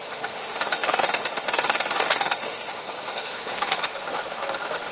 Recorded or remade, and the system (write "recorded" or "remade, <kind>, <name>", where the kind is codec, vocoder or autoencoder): remade, autoencoder, DAC-VAE